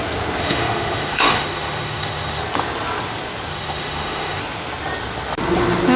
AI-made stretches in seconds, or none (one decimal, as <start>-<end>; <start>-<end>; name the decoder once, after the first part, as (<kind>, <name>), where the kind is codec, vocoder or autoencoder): 0.4-2.4 (autoencoder, DAC-VAE); 3.5-4.4